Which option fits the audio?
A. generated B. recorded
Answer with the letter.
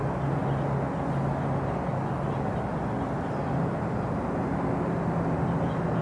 B